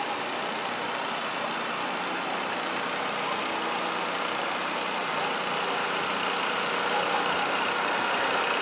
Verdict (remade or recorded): recorded